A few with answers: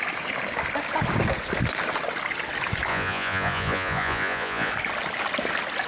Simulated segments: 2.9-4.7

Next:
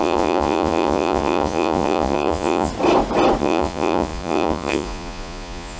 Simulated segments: 0.0-2.7; 3.4-5.8

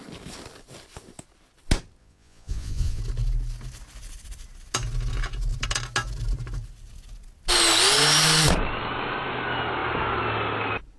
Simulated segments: 2.0-3.0

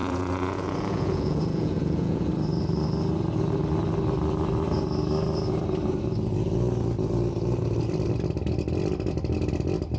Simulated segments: 0.0-2.3

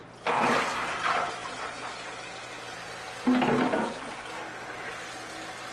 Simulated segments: none

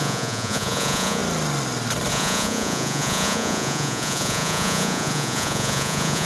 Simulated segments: 0.0-1.2; 2.1-6.3

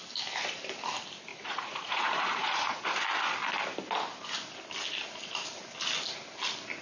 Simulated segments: 1.3-2.8

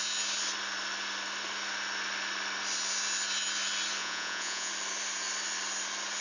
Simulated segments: 4.0-4.7